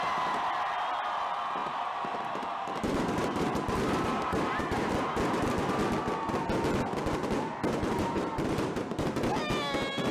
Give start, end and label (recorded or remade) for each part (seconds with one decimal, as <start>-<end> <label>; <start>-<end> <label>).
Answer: 0.0-1.6 recorded; 1.6-4.9 remade; 4.9-7.8 recorded; 7.8-9.1 remade; 9.1-10.1 recorded